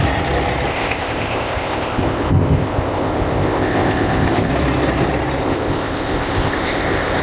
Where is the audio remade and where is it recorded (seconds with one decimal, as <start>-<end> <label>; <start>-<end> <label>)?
0.0-0.7 recorded; 0.7-4.5 remade; 4.5-5.4 recorded; 5.4-7.2 remade